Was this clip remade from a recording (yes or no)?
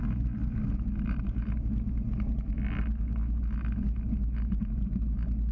no